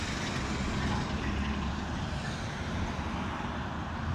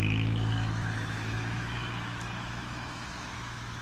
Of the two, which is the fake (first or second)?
second